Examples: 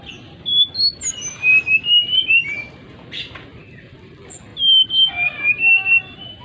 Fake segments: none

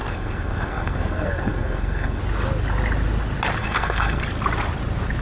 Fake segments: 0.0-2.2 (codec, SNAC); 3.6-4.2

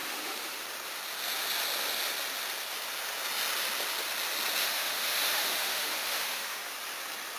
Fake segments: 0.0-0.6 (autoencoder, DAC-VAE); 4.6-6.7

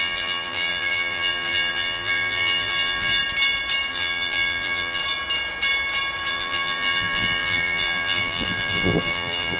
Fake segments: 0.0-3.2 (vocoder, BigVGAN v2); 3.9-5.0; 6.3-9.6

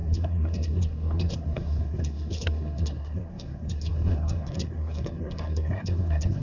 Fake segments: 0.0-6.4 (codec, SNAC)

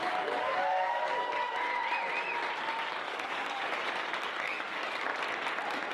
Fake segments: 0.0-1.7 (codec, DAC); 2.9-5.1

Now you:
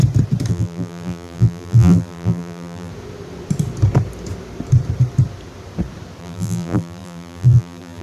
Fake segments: 0.5-2.9 (vocoder, BigVGAN v2); 6.2-8.0

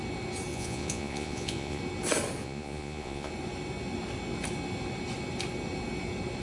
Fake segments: 0.5-1.8 (vocoder, Vocos); 2.4-3.3